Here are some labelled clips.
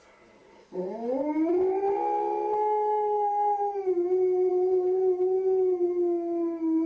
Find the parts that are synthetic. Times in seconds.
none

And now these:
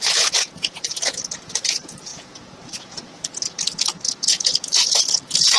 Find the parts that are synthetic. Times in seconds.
0.0-5.6 (vocoder, Vocos)

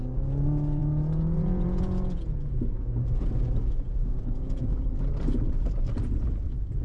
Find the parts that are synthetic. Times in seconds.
0.8-4.7 (vocoder, Vocos)

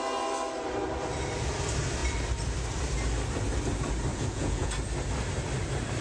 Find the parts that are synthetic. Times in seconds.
4.1-4.7 (vocoder, Vocos)